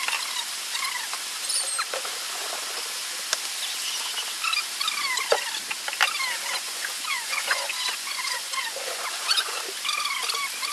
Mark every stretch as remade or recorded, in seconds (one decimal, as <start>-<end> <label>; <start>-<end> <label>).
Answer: 0.0-6.5 recorded; 6.5-9.6 remade; 9.6-10.7 recorded